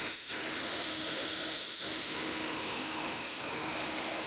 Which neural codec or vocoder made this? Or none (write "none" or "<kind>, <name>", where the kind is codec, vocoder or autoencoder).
autoencoder, DAC-VAE